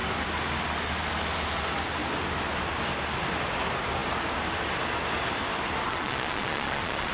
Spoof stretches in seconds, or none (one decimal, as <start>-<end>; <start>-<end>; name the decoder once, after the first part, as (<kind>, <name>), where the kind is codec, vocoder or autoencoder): 5.9-7.1 (vocoder, Vocos)